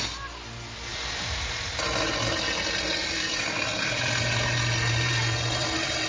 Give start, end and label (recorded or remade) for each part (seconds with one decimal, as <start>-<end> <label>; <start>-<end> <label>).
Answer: 0.0-6.1 recorded